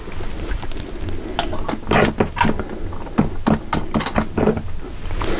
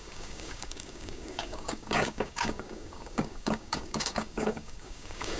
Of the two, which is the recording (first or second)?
first